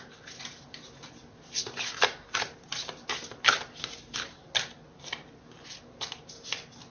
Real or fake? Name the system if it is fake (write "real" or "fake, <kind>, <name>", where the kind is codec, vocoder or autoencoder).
real